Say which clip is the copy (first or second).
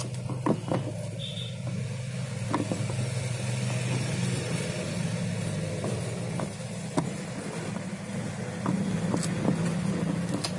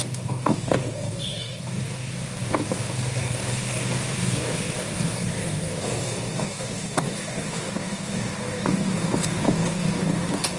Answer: second